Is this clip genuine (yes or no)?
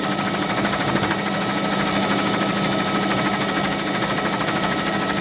yes